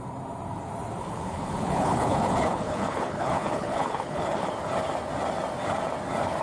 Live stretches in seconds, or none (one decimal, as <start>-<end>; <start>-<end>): 0.0-1.0; 4.5-6.4